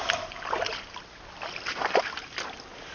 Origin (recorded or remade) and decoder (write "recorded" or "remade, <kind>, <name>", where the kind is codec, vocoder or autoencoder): recorded